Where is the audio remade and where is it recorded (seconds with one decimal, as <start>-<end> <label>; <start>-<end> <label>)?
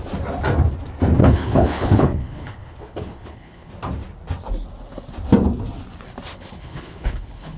0.0-1.2 recorded; 1.2-3.7 remade; 3.7-6.3 recorded; 6.3-7.6 remade